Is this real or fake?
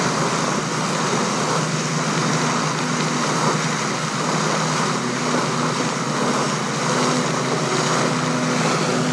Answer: real